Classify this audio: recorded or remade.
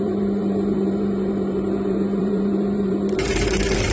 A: remade